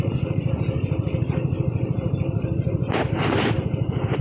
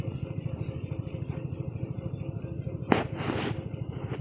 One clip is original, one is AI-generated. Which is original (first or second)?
second